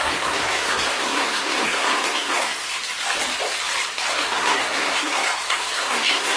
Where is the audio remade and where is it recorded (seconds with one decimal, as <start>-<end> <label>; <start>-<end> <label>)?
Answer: 0.0-2.8 remade; 2.8-4.1 recorded; 4.1-6.4 remade